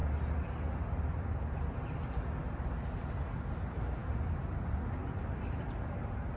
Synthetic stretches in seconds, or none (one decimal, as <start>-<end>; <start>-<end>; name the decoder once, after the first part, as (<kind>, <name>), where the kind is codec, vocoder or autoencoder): none

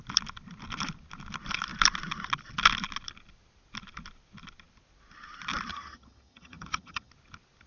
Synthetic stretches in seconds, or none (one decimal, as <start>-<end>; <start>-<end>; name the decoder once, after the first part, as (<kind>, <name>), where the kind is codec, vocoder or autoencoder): 5.7-7.1 (vocoder, HiFi-GAN)

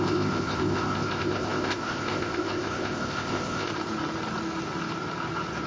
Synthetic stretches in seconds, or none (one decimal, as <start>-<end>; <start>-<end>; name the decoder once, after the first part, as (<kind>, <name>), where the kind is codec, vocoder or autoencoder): 0.0-3.7 (codec, ZipCodec)

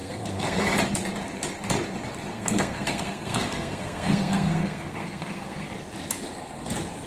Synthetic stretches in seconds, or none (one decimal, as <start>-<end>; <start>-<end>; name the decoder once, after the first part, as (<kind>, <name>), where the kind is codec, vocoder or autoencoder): 0.0-0.6 (codec, SNAC); 2.3-5.7